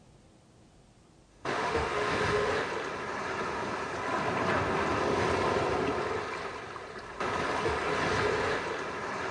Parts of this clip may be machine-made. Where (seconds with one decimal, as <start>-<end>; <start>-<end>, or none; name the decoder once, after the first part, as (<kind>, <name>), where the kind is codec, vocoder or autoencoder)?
1.3-2.5 (autoencoder, DAC-VAE)